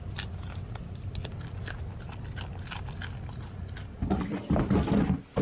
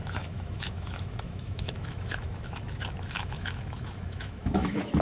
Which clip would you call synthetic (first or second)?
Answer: second